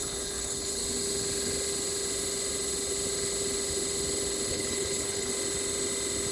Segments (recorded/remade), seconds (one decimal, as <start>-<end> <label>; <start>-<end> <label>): 0.0-0.8 remade; 0.8-4.5 recorded; 4.5-5.3 remade; 5.3-6.3 recorded